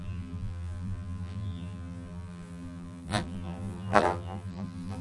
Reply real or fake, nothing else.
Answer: fake